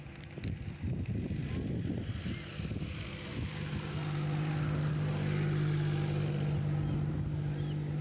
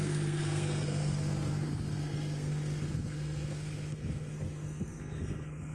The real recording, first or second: first